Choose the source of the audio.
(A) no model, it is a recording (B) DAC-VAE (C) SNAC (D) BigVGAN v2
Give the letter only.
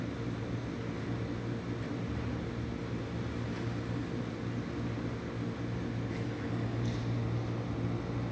A